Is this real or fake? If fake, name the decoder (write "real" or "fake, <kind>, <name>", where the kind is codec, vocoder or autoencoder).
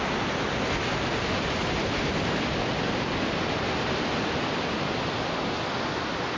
real